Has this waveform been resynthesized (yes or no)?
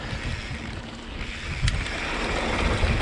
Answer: no